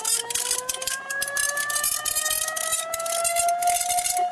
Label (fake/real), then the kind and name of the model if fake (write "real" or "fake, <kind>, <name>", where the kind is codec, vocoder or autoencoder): real